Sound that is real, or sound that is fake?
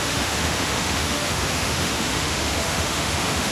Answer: fake